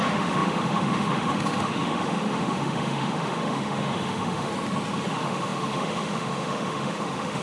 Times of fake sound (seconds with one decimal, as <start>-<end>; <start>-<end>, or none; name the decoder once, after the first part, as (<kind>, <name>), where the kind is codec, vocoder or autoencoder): 0.0-4.5 (autoencoder, DAC-VAE); 5.1-7.4